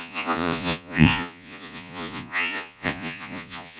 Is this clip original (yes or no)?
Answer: no